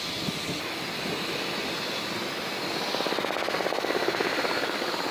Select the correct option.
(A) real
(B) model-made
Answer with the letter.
A